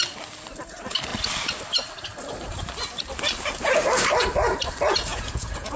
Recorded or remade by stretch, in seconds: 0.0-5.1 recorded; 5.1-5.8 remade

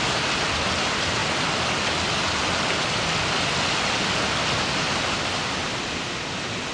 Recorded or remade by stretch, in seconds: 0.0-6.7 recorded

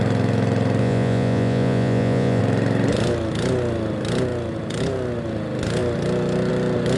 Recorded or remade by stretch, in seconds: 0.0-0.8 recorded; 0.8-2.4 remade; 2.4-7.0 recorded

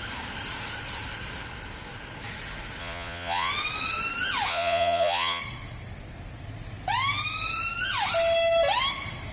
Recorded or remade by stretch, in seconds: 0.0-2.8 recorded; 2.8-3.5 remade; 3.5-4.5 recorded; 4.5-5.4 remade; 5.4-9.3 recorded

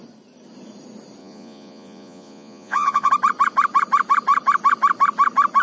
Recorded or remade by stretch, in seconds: 0.0-1.2 recorded; 1.2-3.1 remade; 3.1-5.6 recorded